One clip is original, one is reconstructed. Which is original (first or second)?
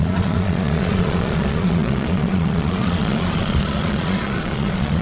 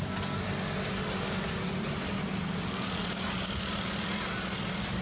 second